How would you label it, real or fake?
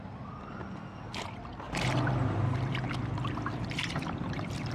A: fake